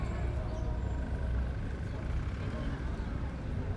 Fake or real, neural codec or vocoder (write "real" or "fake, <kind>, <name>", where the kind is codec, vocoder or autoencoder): real